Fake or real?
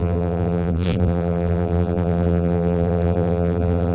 fake